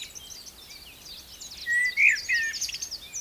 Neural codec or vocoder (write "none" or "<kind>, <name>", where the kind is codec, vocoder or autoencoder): none